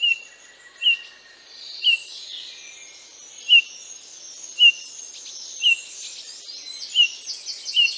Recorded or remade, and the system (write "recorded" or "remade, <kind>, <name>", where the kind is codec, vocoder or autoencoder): recorded